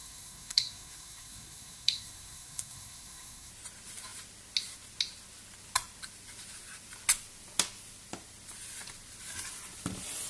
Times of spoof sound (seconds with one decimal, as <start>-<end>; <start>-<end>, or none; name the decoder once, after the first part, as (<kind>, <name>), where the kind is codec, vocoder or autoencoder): 0.0-3.5 (codec, SNAC)